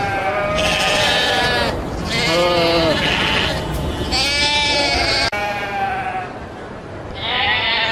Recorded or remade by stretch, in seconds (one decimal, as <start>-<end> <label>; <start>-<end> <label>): 0.0-0.6 remade; 0.6-4.4 recorded; 4.4-7.9 remade